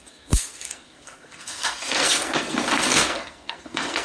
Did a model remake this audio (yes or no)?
yes